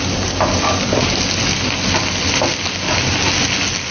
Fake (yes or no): no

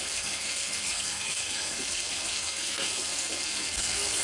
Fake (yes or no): yes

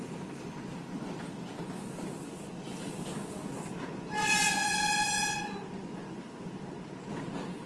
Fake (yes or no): no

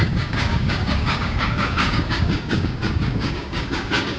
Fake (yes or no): yes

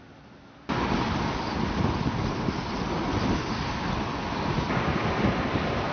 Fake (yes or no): no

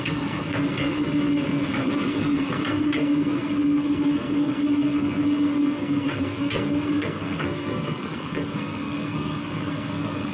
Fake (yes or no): yes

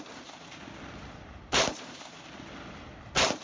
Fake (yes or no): no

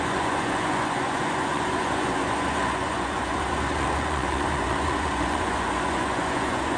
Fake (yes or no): yes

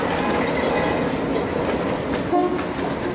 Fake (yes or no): no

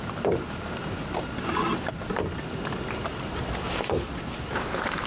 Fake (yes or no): no